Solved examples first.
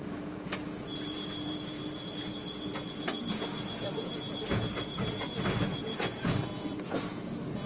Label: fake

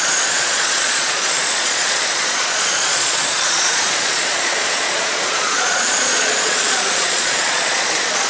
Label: fake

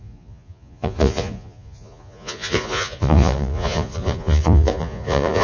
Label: fake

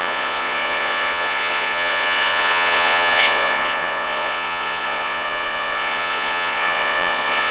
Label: fake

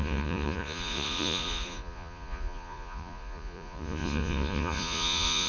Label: fake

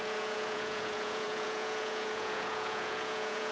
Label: fake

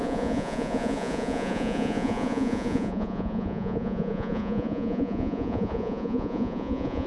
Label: fake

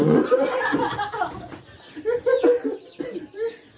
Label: real